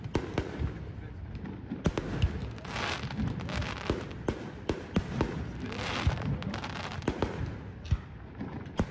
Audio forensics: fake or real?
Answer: real